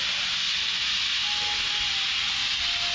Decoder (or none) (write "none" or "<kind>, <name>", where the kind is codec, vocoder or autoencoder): none